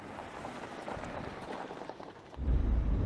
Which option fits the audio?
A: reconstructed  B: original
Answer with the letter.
A